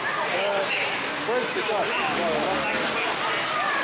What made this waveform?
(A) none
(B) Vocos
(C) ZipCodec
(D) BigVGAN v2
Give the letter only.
A